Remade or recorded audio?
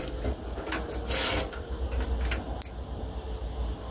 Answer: recorded